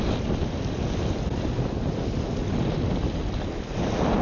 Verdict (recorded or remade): recorded